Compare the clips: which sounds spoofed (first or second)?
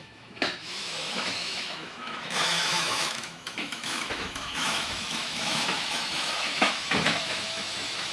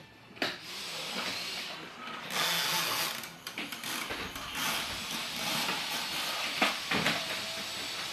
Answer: first